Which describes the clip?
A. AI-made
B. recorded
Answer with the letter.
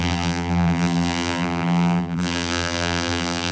A